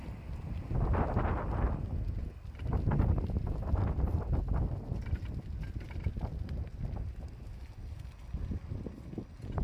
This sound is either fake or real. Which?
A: real